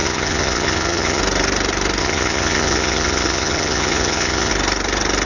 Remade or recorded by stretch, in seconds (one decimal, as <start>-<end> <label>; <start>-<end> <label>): 0.0-1.2 remade; 1.2-2.0 recorded; 2.0-4.5 remade; 4.5-5.3 recorded